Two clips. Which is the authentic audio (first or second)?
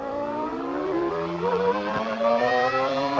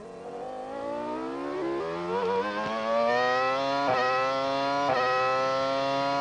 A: second